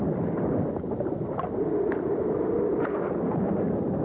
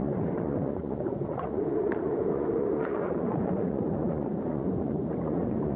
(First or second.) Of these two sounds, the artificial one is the second